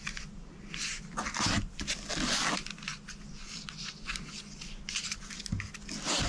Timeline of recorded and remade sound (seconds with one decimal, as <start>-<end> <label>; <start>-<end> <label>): 0.0-6.3 recorded